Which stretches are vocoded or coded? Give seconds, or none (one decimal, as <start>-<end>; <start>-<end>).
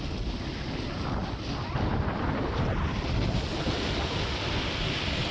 1.2-2.4